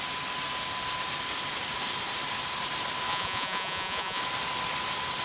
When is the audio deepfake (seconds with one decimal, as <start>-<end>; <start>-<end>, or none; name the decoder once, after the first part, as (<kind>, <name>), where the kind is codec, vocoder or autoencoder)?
3.1-4.2 (vocoder, Vocos)